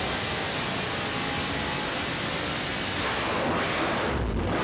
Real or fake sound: real